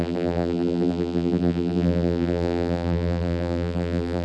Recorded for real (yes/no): no